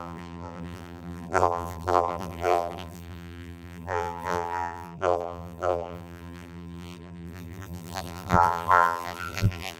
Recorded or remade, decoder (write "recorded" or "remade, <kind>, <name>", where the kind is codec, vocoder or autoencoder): remade, vocoder, BigVGAN v2